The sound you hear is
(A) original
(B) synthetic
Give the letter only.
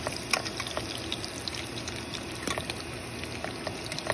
A